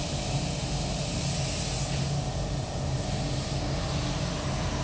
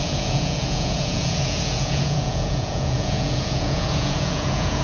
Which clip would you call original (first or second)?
first